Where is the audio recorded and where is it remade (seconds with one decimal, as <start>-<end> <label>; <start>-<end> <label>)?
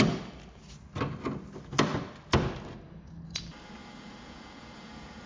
0.0-3.8 recorded; 3.8-5.3 remade